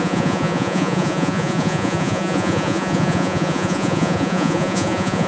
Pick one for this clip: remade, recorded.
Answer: remade